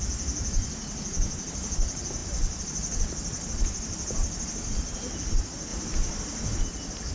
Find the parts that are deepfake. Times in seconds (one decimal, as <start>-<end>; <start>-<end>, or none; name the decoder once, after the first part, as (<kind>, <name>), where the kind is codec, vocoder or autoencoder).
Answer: 2.2-4.7 (vocoder, BigVGAN v2); 5.7-6.6